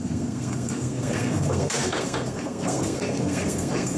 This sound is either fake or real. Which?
fake